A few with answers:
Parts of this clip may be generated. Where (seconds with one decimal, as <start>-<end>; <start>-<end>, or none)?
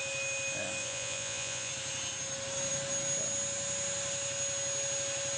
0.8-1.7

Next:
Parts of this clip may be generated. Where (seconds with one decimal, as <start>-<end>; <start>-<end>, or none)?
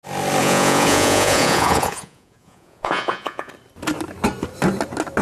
0.4-3.5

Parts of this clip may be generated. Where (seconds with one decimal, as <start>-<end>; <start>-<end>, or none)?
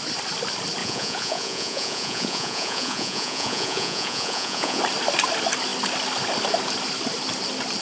0.8-4.8